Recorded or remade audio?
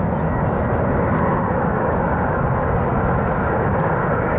recorded